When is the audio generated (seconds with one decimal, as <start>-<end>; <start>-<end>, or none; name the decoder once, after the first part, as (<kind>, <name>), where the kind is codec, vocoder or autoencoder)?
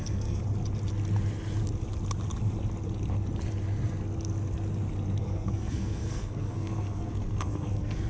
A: 0.0-0.4 (codec, SNAC); 5.2-8.1